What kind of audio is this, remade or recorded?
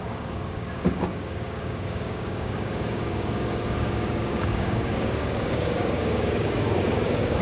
remade